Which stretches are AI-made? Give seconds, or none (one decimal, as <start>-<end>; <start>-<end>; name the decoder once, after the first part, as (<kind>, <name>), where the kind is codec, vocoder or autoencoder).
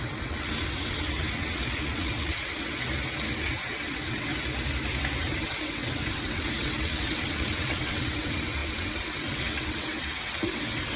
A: 0.0-2.8 (vocoder, WaveNeXt); 3.4-4.3; 5.2-11.0